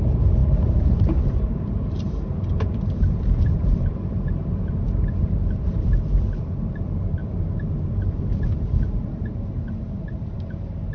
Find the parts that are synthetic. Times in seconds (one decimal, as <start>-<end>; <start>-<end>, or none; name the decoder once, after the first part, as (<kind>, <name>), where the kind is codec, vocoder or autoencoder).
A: 0.0-7.2 (vocoder, BigVGAN v2); 8.4-10.9